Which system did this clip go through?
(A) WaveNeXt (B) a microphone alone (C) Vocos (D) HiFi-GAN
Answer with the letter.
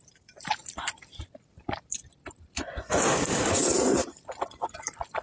B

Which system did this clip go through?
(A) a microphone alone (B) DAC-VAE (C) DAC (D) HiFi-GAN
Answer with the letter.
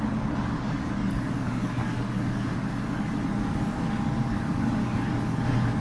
C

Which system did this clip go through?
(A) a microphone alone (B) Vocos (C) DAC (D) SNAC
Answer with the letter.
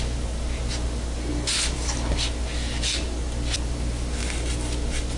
A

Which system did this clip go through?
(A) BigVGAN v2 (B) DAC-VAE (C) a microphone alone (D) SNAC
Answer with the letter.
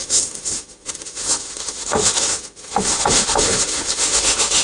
B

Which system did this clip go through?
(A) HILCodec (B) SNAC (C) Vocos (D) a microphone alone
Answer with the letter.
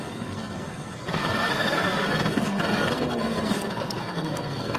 B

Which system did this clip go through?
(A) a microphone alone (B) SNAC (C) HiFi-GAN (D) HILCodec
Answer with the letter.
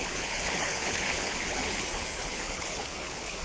D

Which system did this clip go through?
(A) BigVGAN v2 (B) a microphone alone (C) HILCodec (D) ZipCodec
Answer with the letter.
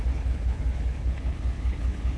C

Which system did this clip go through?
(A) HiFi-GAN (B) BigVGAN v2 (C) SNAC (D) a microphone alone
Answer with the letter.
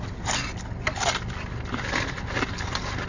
D